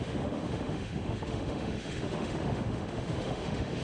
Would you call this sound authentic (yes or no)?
no